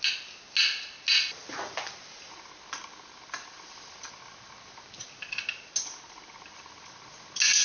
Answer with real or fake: real